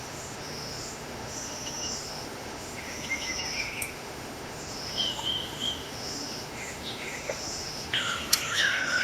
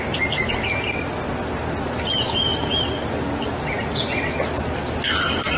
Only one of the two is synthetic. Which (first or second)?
first